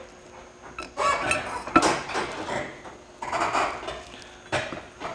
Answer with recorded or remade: recorded